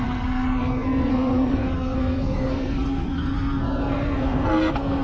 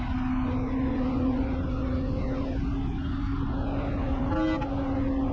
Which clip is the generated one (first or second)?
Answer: first